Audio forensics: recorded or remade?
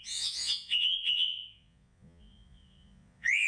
remade